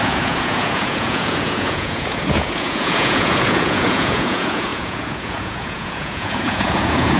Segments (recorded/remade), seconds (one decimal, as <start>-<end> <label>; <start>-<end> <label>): 0.0-7.2 remade